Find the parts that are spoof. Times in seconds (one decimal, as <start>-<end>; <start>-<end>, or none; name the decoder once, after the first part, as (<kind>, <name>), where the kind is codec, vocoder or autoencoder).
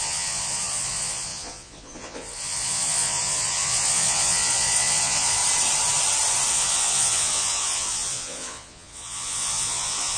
0.0-5.4 (vocoder, Vocos); 6.5-10.2